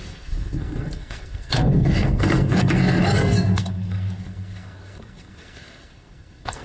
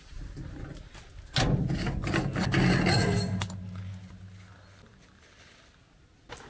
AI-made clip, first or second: first